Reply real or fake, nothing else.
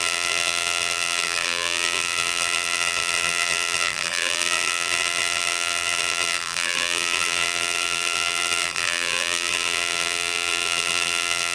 fake